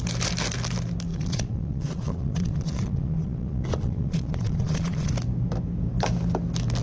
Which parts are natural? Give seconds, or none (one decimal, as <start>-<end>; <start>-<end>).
0.0-1.1; 5.1-6.8